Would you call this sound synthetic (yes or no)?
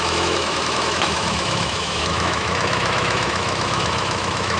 yes